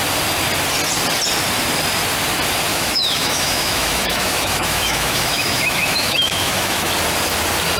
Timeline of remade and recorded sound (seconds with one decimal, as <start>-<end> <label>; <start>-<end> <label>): 0.0-2.7 recorded; 2.7-6.9 remade; 6.9-7.8 recorded